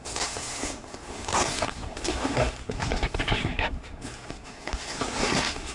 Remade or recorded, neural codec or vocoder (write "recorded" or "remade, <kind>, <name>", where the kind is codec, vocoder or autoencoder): remade, codec, SNAC